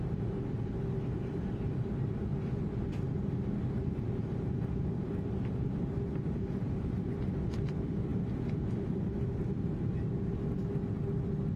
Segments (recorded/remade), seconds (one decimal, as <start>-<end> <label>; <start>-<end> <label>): 0.0-11.6 recorded